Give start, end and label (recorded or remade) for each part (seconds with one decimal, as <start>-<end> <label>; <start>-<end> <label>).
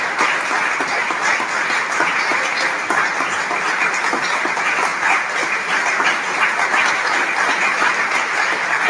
0.0-8.9 recorded